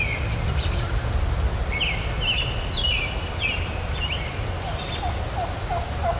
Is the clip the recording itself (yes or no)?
yes